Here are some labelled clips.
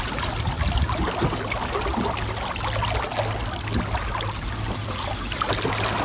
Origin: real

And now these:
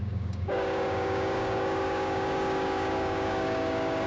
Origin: fake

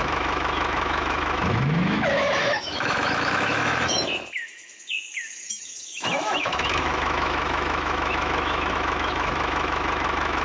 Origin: fake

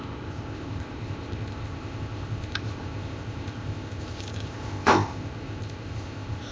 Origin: fake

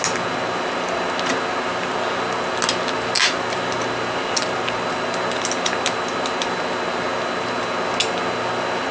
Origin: real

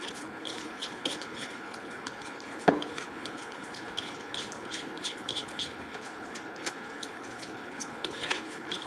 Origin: fake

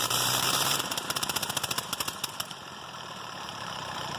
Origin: fake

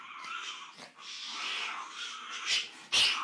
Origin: real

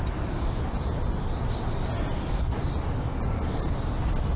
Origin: real